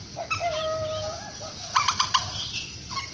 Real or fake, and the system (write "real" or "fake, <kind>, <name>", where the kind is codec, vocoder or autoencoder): real